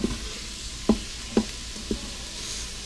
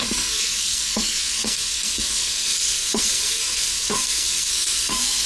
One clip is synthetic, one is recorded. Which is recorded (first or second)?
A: first